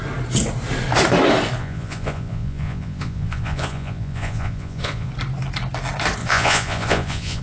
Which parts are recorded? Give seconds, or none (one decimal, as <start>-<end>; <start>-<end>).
0.0-1.6; 5.1-6.2

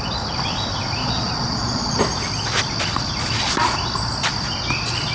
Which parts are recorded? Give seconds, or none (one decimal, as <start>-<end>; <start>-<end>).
0.0-1.0; 2.0-5.1

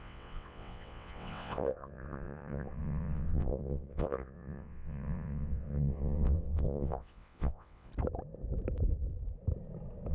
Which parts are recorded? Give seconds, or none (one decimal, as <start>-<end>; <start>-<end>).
7.9-10.1

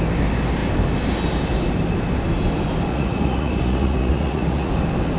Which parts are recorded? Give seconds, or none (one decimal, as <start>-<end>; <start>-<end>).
0.0-2.9; 4.7-5.2

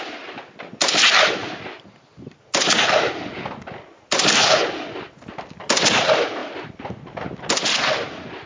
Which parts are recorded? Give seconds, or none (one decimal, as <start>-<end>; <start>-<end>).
0.0-8.5

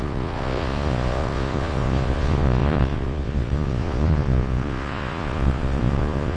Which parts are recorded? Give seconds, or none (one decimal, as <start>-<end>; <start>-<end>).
none

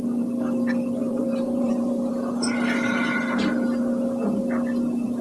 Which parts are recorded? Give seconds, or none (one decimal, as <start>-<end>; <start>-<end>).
0.0-1.0; 2.1-5.2

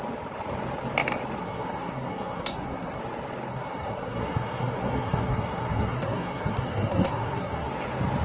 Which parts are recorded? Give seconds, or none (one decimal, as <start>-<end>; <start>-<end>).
0.0-1.4; 3.0-3.5; 7.7-8.2